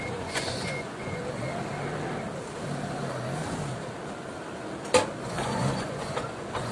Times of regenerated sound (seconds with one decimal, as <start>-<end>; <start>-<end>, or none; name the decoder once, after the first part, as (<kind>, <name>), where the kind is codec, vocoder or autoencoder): 0.0-1.2 (vocoder, Vocos); 5.2-6.7